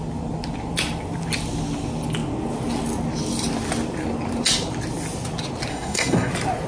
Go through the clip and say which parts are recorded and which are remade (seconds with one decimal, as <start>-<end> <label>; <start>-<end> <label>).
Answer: 0.0-5.7 recorded; 5.7-6.3 remade; 6.3-6.7 recorded